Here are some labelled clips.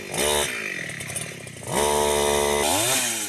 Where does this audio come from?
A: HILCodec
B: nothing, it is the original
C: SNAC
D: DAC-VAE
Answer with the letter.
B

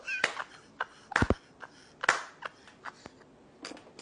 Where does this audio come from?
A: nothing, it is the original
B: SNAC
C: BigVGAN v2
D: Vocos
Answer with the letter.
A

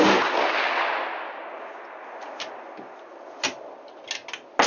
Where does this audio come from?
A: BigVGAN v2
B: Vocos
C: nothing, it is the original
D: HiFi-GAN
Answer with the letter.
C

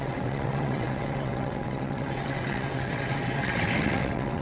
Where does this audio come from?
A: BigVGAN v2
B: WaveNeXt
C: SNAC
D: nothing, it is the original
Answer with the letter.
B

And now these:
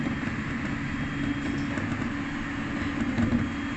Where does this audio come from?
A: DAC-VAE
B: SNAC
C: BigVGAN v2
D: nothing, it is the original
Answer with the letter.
D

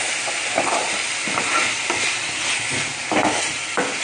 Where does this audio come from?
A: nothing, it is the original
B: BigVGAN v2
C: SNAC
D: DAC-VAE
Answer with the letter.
A